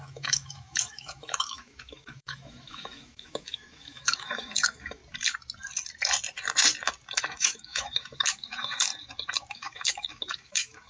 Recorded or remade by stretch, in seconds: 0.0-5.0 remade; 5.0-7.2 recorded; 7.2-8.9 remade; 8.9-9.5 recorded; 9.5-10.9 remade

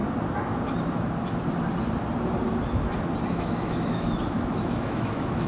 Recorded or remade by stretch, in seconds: 0.0-3.3 recorded; 3.3-5.5 remade

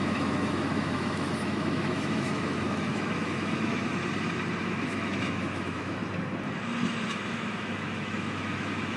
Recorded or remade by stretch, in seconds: 0.0-3.9 remade; 3.9-4.6 recorded; 4.6-6.0 remade; 6.0-7.1 recorded; 7.1-9.0 remade

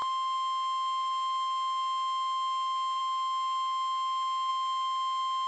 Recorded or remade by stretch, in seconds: 0.0-5.5 recorded

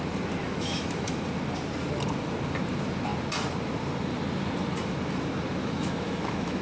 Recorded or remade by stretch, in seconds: 0.0-0.4 recorded; 0.4-1.2 remade; 1.2-5.6 recorded; 5.6-6.6 remade

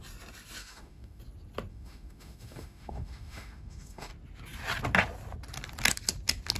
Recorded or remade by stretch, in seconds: 0.0-0.6 recorded; 0.6-1.2 remade; 1.2-1.7 recorded; 1.7-4.1 remade; 4.1-6.6 recorded

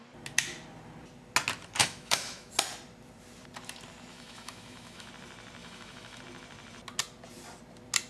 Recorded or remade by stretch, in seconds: 0.0-1.8 recorded; 1.8-2.5 remade; 2.5-4.1 recorded; 4.1-5.1 remade; 5.1-5.6 recorded; 5.6-6.2 remade; 6.2-8.1 recorded